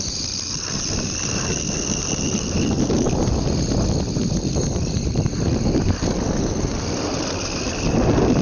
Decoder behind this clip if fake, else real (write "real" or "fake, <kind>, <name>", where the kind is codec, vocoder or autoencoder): real